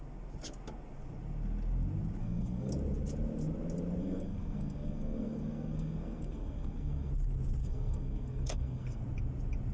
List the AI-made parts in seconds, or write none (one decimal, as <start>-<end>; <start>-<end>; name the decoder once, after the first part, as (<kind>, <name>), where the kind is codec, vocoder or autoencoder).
2.2-2.7 (codec, SNAC); 4.0-7.1; 7.6-9.0